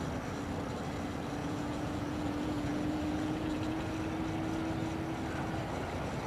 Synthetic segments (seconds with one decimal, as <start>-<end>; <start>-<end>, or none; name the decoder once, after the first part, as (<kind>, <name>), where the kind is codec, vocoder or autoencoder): 1.4-3.9 (vocoder, Vocos)